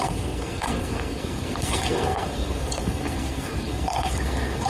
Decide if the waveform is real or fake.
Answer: fake